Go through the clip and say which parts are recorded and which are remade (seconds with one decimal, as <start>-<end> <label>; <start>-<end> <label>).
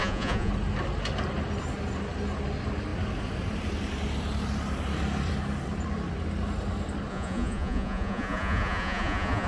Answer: 0.0-0.5 remade; 0.5-7.1 recorded; 7.1-9.5 remade